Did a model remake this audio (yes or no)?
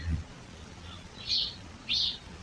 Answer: yes